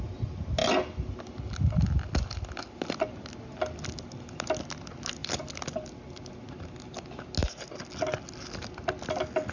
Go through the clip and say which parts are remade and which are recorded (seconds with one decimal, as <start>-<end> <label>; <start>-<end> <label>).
0.0-9.5 recorded